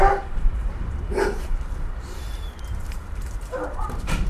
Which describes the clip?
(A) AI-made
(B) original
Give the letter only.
A